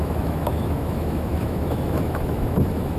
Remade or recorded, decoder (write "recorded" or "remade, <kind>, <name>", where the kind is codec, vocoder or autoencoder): remade, autoencoder, DAC-VAE